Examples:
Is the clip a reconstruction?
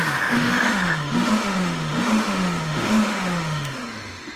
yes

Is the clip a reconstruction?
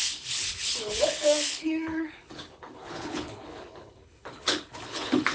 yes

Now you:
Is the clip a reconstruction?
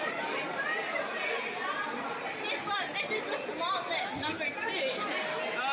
no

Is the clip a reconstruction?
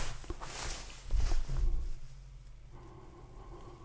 no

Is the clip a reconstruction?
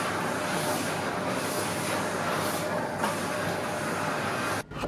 no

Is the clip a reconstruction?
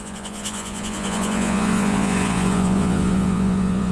yes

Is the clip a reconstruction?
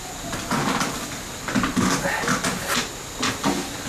no